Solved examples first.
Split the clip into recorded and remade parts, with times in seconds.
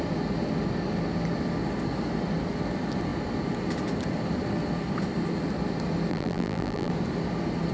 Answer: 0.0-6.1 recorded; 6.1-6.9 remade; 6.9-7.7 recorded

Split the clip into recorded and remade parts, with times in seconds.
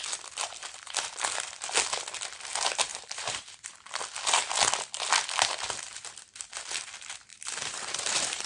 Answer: 0.0-2.9 recorded; 2.9-3.9 remade; 3.9-7.3 recorded; 7.3-8.5 remade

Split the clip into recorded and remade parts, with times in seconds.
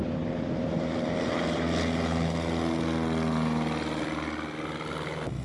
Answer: 0.0-5.4 recorded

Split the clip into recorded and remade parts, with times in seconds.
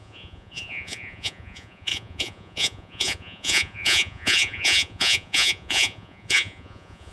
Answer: 0.0-7.1 remade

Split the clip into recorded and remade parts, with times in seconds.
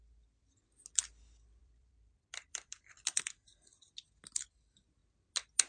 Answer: 0.0-1.6 recorded; 1.6-3.2 remade; 3.2-5.7 recorded